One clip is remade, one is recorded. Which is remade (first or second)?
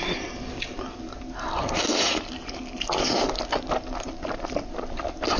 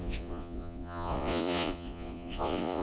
second